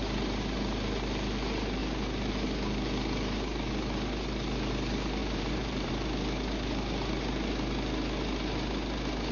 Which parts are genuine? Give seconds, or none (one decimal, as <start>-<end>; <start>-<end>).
0.0-5.2; 5.9-9.3

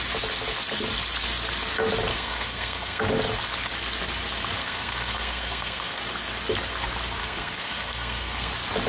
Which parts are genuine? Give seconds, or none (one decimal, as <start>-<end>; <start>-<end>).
0.0-2.1; 3.0-4.6; 6.0-7.2; 8.5-8.9

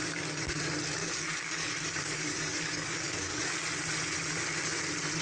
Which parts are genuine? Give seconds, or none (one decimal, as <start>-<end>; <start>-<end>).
0.6-1.0; 3.5-5.2

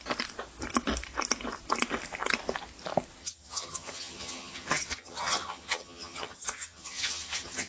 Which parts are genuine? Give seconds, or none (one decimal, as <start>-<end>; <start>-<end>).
0.0-3.2

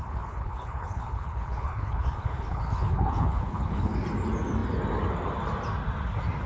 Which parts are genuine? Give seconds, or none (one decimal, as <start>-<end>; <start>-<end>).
3.9-6.5

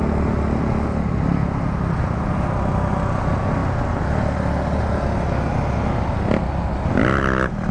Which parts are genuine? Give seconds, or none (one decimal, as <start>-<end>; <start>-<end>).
0.0-7.7